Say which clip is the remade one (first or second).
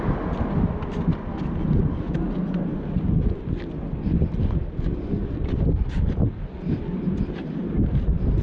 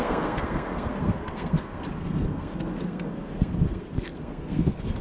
second